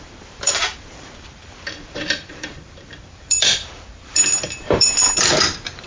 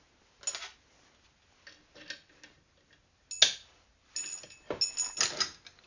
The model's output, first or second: first